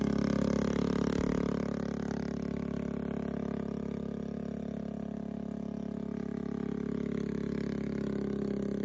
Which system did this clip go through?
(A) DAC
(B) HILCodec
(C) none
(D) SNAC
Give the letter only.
C